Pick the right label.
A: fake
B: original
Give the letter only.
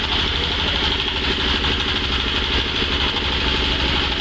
B